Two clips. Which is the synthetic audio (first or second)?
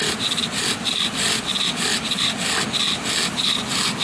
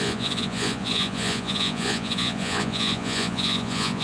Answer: second